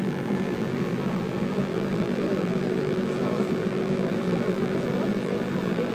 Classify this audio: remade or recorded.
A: remade